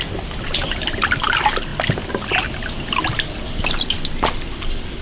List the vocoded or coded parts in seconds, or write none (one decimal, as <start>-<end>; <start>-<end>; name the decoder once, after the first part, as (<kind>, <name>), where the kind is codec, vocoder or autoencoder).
none